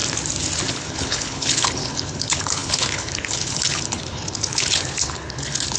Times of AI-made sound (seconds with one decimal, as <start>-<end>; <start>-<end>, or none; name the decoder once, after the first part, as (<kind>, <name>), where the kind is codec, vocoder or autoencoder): 0.7-5.8 (codec, HILCodec)